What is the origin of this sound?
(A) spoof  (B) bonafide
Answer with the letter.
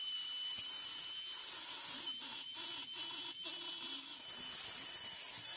B